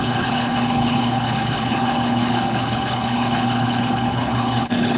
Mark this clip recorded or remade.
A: remade